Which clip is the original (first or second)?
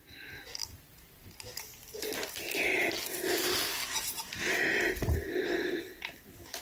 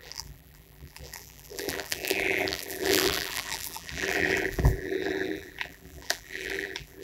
first